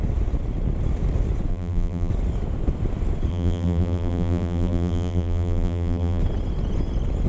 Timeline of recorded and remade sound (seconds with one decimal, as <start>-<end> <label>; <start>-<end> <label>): 0.0-1.5 recorded; 1.5-2.1 remade; 2.1-3.3 recorded; 3.3-6.2 remade; 6.2-7.3 recorded

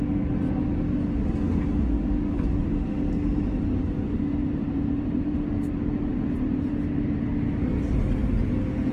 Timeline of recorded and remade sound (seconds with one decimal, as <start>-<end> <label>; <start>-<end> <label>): 0.0-4.4 recorded; 4.4-5.5 remade; 5.5-8.9 recorded

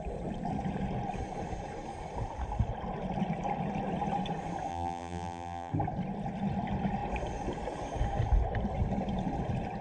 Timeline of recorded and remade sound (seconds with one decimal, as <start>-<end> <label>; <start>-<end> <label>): 0.0-4.7 recorded; 4.7-5.7 remade; 5.7-9.8 recorded

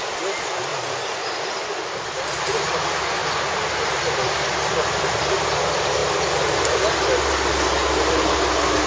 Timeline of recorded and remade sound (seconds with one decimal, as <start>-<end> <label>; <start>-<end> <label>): 0.0-3.2 recorded; 3.2-4.0 remade; 4.0-8.9 recorded

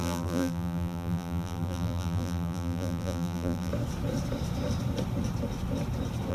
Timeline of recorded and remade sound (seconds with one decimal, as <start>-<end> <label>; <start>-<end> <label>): 0.0-3.7 remade; 3.7-6.3 recorded

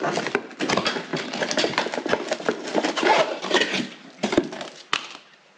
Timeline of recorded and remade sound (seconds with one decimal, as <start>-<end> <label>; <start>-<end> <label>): 0.0-1.1 recorded; 1.1-2.1 remade; 2.1-2.7 recorded; 2.7-4.2 remade; 4.2-5.6 recorded

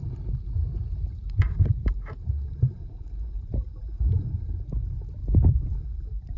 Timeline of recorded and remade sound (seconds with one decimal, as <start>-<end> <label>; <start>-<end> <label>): 0.0-1.1 recorded; 1.1-4.7 remade; 4.7-5.2 recorded; 5.2-6.4 remade

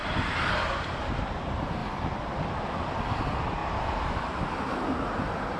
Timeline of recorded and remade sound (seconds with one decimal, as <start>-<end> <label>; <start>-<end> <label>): 0.0-5.6 recorded